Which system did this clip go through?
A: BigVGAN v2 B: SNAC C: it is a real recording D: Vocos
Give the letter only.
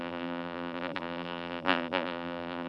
A